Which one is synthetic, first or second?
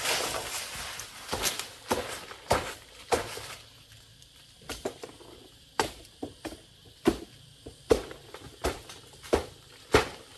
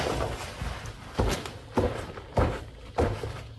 first